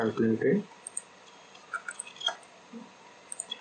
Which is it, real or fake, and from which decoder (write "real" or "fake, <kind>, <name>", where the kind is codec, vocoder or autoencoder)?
real